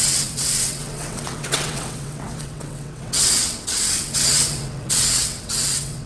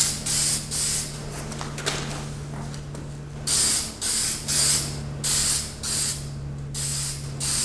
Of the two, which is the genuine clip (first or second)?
second